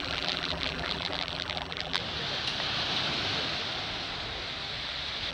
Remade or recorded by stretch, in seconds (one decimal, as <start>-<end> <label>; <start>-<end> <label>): 0.0-2.0 remade; 2.0-5.3 recorded